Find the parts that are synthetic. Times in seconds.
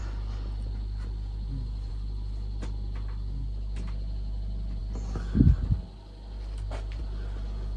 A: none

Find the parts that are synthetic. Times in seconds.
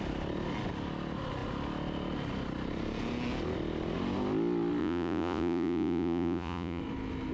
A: 4.8-6.8 (vocoder, Vocos)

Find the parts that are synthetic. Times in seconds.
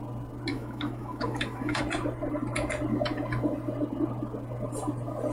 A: 0.5-1.8 (autoencoder, DAC-VAE)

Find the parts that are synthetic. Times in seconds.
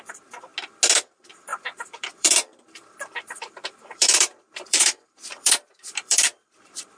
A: 0.0-0.5 (vocoder, BigVGAN v2); 1.1-7.0